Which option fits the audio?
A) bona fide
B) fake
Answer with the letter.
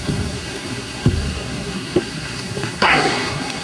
B